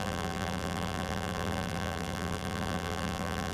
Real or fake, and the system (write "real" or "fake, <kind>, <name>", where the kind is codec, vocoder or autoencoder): fake, vocoder, BigVGAN v2